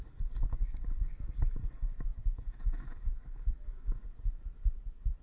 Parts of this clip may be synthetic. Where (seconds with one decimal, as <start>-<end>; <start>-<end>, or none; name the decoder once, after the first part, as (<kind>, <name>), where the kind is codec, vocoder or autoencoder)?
2.1-4.0 (autoencoder, DAC-VAE)

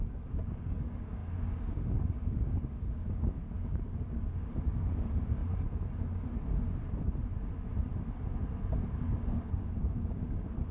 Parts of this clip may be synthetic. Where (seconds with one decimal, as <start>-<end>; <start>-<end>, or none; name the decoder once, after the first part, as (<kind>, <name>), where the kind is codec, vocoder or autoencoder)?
0.0-3.4 (codec, DAC); 4.0-5.4; 9.0-10.7

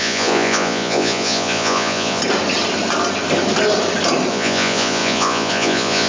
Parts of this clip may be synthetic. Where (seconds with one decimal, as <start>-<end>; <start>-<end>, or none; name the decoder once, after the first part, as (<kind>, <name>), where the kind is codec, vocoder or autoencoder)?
0.0-2.2 (vocoder, Vocos); 4.3-6.1

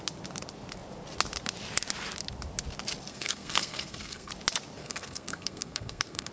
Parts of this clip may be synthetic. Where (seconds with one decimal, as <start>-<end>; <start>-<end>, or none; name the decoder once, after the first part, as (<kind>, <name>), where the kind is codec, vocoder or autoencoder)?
3.1-4.3 (codec, SNAC); 4.8-6.3

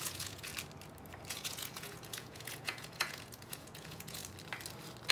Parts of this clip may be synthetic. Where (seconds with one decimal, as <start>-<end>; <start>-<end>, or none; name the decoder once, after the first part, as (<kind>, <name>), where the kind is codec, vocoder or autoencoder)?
0.0-0.5 (vocoder, Vocos); 1.3-4.2